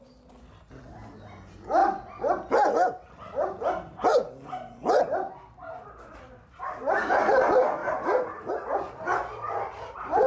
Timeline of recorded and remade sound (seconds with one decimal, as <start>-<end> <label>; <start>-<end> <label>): 0.0-10.3 recorded